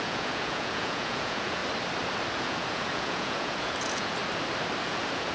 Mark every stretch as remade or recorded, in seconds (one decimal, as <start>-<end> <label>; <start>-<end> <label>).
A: 0.0-1.6 remade; 1.6-2.3 recorded; 2.3-4.2 remade; 4.2-4.8 recorded; 4.8-5.3 remade